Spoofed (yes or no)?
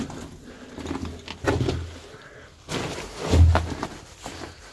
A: no